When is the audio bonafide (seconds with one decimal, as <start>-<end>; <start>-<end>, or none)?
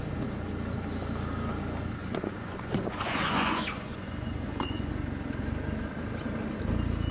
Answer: 0.0-2.0; 4.9-7.1